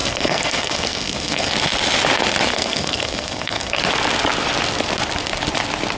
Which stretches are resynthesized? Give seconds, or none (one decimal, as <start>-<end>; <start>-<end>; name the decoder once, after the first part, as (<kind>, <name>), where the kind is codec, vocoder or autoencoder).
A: 0.0-1.5 (codec, SNAC); 2.5-3.8